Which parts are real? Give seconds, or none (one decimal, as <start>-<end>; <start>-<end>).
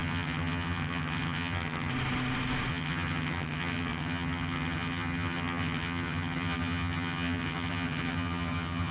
1.9-2.7